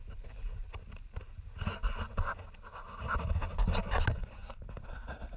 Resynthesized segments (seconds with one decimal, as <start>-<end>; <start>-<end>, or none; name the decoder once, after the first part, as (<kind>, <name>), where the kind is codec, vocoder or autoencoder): none